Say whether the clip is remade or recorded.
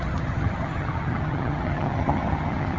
remade